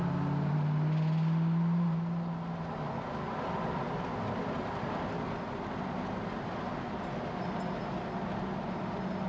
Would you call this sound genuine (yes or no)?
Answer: yes